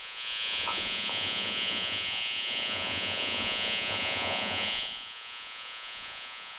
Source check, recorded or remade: remade